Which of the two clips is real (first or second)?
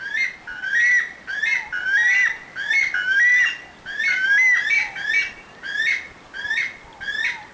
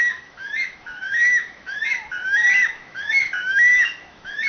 first